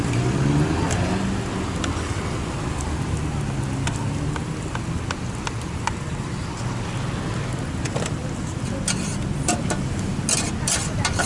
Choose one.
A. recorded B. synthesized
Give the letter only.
A